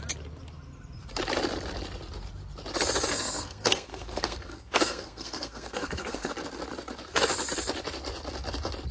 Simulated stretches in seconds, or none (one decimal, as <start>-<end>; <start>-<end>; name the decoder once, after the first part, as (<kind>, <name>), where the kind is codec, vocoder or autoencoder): 3.1-6.3 (codec, SNAC)